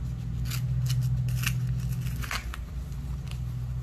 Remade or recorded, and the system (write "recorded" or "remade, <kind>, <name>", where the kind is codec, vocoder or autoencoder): recorded